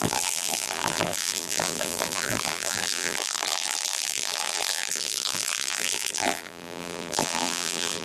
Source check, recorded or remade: remade